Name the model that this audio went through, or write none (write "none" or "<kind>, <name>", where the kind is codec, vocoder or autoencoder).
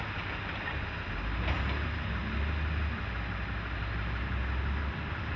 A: none